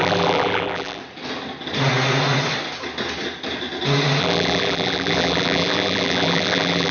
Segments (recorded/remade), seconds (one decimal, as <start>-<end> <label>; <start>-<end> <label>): 0.0-1.0 remade; 1.0-4.2 recorded; 4.2-6.9 remade